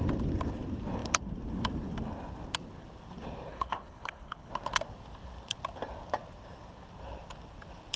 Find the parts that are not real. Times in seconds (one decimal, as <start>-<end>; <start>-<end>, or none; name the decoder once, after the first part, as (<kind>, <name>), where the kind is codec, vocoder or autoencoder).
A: 3.5-4.5 (codec, HILCodec)

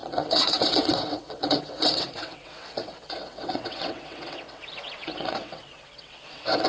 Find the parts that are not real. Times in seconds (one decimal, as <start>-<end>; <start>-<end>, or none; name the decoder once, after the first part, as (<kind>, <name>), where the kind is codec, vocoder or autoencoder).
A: 0.0-6.7 (vocoder, WaveNeXt)

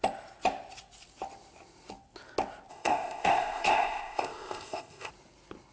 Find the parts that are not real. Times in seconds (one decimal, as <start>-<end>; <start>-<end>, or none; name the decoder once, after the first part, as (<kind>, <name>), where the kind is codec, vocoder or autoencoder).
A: 2.7-5.1 (codec, ZipCodec)